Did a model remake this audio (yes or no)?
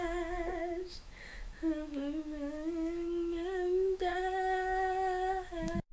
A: yes